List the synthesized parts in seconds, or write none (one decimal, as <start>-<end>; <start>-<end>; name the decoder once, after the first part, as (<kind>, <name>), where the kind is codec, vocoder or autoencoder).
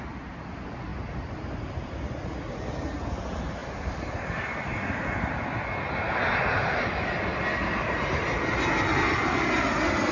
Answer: none